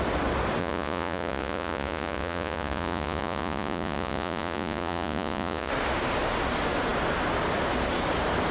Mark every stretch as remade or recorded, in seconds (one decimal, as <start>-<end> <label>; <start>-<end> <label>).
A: 0.0-0.6 recorded; 0.6-5.7 remade; 5.7-8.5 recorded